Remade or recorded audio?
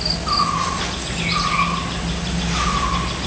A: recorded